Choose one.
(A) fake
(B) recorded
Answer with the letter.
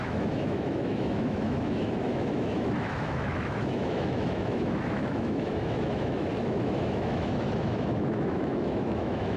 A